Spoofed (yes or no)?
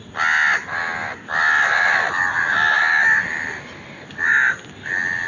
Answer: no